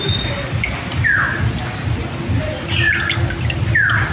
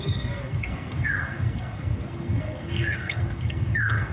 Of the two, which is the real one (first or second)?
first